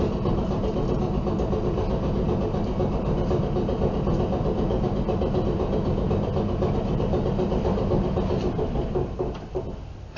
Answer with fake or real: real